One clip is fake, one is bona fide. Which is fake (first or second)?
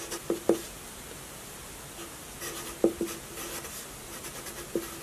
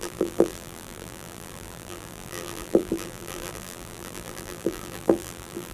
second